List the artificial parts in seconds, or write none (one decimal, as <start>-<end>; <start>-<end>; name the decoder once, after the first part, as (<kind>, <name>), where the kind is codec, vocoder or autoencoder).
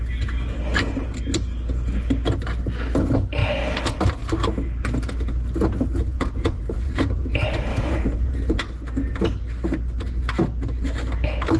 6.1-7.3 (vocoder, Vocos); 7.7-8.5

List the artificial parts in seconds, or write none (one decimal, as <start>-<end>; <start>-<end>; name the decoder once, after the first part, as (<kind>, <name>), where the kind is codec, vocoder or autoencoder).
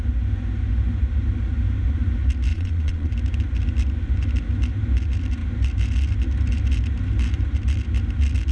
2.5-3.1 (vocoder, Vocos)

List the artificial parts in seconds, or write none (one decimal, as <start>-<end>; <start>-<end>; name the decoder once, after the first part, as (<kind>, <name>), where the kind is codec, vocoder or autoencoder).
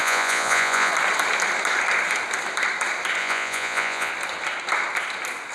0.0-0.9 (vocoder, Vocos); 3.2-4.1